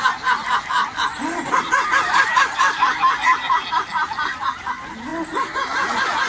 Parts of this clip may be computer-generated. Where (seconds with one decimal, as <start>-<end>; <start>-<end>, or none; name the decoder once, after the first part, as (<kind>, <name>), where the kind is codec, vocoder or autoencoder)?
none